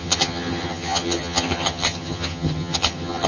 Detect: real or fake fake